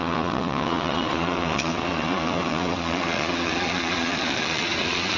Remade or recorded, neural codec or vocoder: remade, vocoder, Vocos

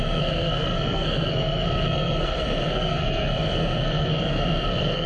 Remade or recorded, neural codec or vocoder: remade, codec, SNAC